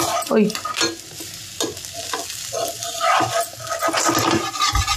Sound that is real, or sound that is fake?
real